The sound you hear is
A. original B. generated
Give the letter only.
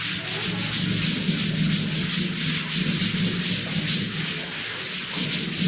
A